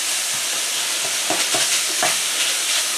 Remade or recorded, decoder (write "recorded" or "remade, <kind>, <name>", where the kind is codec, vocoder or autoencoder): recorded